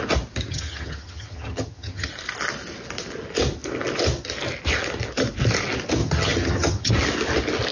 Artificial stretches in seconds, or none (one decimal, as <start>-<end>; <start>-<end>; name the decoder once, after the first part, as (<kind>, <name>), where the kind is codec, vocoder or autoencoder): 0.5-2.1 (vocoder, HiFi-GAN); 6.0-6.9